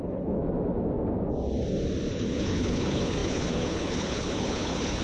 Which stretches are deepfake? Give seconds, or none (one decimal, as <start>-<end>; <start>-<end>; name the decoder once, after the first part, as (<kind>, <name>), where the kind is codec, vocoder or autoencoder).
0.0-0.4 (codec, HILCodec); 2.1-5.0